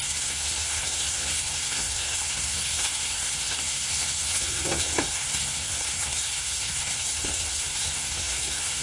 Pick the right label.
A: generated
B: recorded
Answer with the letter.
A